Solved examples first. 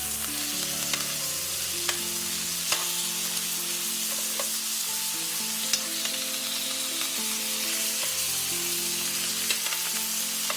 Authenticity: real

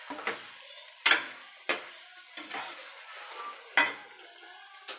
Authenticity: real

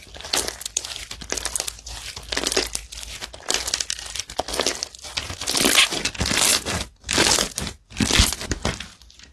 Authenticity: real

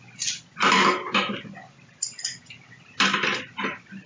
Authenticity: real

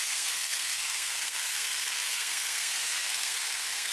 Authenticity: fake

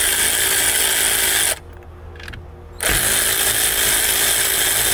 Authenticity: real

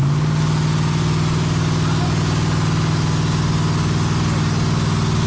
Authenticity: real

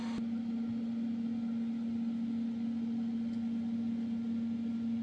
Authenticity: real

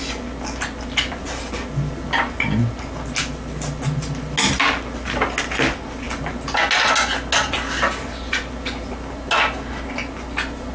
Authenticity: real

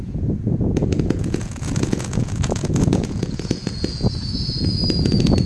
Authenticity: fake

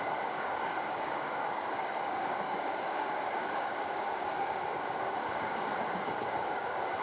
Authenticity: fake